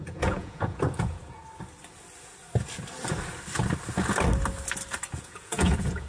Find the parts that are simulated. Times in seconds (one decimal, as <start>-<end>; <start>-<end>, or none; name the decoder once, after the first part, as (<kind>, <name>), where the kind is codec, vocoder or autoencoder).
0.0-1.4 (vocoder, Vocos); 5.1-6.1